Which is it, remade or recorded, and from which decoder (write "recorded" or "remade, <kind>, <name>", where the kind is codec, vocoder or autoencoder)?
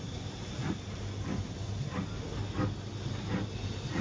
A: recorded